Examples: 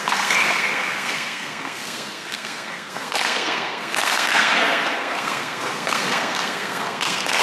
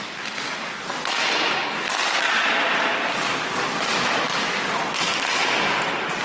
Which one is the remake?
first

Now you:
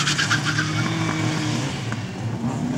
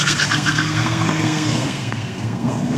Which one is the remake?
second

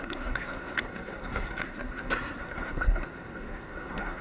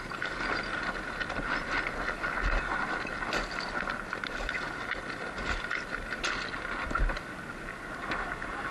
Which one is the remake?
first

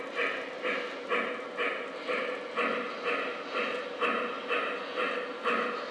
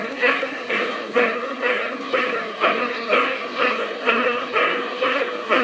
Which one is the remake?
second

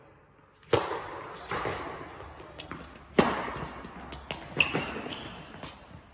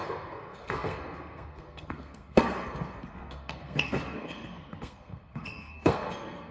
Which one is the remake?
second